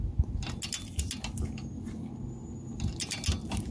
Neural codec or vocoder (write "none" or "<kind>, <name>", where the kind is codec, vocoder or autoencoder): none